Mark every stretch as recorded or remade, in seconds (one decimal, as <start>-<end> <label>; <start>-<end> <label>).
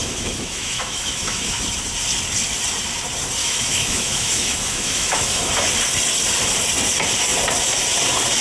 0.0-1.6 remade; 1.6-3.4 recorded; 3.4-5.5 remade; 5.5-8.4 recorded